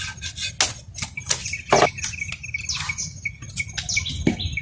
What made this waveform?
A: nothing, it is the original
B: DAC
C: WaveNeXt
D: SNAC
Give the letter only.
A